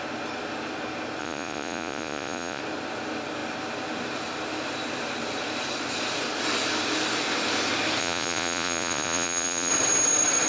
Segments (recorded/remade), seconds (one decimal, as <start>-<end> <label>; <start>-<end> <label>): 0.0-1.2 recorded; 1.2-2.6 remade; 2.6-8.0 recorded; 8.0-9.7 remade; 9.7-10.5 recorded